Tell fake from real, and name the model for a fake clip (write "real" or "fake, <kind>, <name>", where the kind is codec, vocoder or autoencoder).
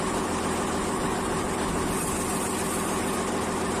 real